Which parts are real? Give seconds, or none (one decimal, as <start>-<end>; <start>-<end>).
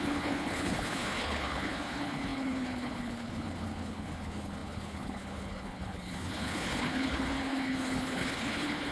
none